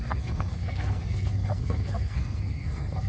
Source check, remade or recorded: remade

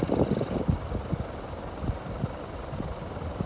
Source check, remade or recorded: recorded